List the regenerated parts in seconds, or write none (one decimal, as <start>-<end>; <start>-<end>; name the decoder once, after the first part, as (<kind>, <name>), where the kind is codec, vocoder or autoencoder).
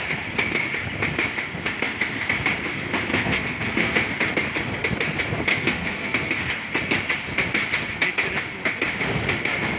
3.1-4.1 (codec, SNAC); 5.5-6.5